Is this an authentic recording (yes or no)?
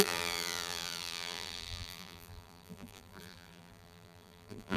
no